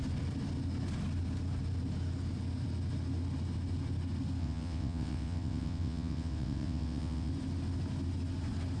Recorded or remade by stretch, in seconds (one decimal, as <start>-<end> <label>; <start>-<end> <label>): 0.0-4.4 recorded; 4.4-7.3 remade; 7.3-8.8 recorded